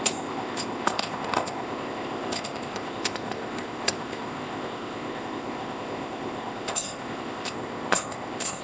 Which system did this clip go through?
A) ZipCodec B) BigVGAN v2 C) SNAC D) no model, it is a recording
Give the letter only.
A